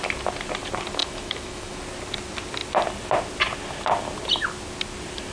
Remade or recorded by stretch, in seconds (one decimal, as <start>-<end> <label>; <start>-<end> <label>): 0.0-1.0 recorded; 1.0-1.8 remade; 1.8-5.3 recorded